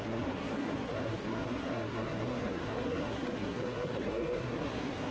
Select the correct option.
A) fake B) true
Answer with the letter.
A